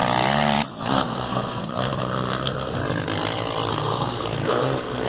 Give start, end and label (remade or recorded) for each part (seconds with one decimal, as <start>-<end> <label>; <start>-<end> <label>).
0.0-0.7 recorded; 0.7-2.8 remade; 2.8-3.7 recorded; 3.7-5.1 remade